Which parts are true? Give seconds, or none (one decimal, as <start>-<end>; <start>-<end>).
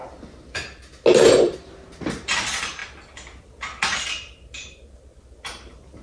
0.0-6.0